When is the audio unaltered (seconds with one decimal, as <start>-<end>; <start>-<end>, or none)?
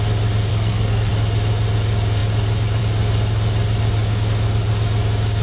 0.0-0.5; 1.1-5.4